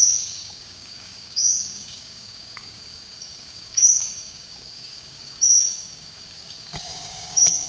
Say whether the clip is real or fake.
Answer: fake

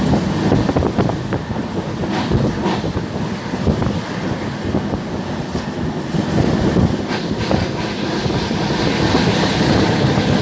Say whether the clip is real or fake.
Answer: real